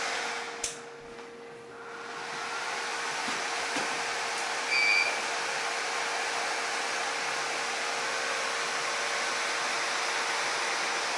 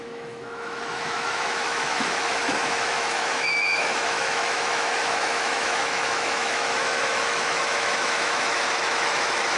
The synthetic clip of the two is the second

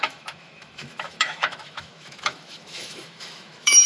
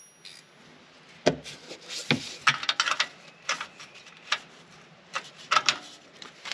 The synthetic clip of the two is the first